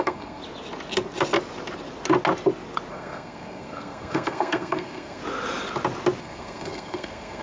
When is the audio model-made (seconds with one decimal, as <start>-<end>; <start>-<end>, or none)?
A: 0.0-0.4; 2.9-5.2; 6.2-7.4